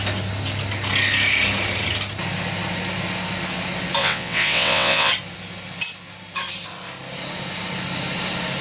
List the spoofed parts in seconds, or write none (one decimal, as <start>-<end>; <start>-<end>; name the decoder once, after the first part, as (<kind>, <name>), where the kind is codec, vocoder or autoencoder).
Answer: 4.0-5.1 (vocoder, WaveNeXt)